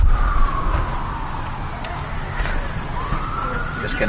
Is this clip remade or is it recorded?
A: recorded